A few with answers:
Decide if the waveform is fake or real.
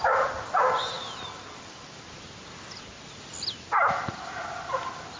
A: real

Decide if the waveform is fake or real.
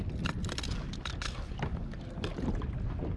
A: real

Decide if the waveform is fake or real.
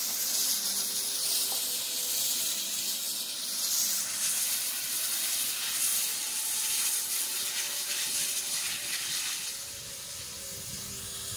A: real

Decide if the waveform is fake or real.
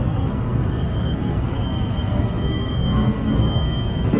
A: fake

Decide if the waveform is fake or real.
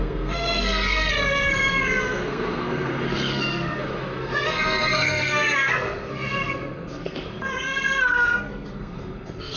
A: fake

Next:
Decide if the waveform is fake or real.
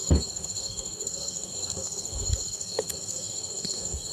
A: fake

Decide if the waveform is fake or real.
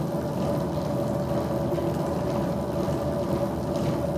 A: real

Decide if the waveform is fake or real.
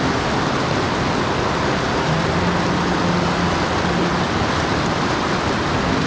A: real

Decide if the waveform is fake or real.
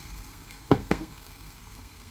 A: fake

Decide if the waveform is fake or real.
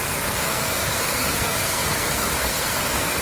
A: fake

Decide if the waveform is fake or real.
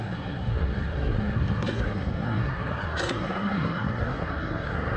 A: fake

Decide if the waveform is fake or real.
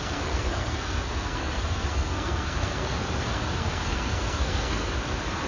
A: fake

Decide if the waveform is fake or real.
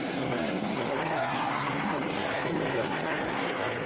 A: fake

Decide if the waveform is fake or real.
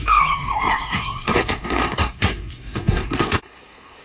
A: fake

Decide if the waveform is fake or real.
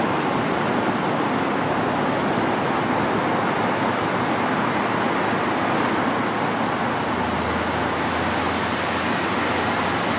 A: real